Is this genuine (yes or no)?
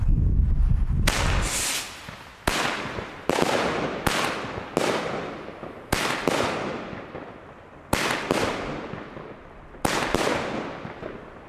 yes